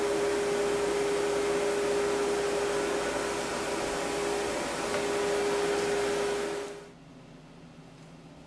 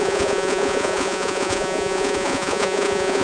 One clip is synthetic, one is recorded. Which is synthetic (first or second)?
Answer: second